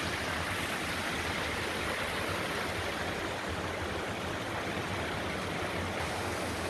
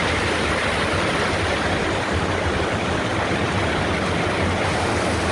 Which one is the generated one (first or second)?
second